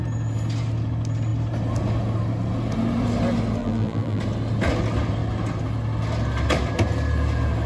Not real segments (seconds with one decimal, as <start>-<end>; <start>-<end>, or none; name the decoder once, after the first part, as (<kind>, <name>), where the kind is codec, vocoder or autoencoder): 3.6-4.2 (vocoder, BigVGAN v2)